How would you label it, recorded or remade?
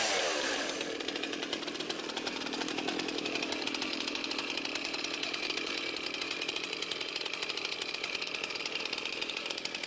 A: remade